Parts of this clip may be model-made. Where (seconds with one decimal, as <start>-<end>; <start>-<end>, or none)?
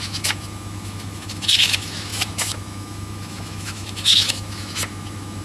0.0-5.4